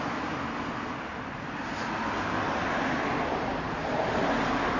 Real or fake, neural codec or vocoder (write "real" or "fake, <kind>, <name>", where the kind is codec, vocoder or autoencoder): real